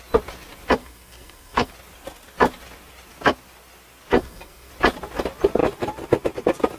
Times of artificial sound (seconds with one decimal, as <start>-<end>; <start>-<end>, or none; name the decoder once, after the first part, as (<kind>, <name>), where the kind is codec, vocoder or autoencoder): 0.8-1.7 (codec, SNAC); 4.1-4.7